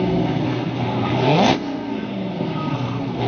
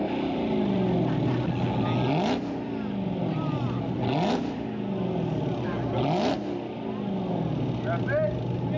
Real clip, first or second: second